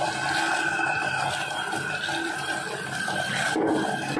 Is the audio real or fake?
real